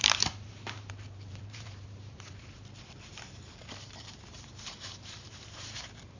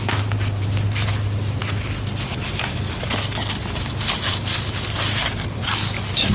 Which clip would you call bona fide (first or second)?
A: second